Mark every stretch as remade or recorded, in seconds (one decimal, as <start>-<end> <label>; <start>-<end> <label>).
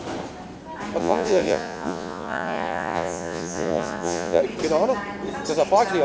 0.0-1.0 recorded; 1.0-4.4 remade; 4.4-6.0 recorded